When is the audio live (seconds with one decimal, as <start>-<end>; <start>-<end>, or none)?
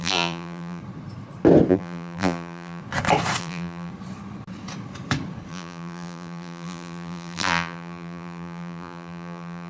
0.8-1.7; 2.8-3.4; 3.9-5.5